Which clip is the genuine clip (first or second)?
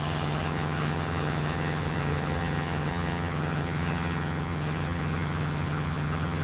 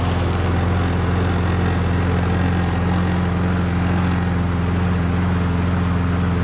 second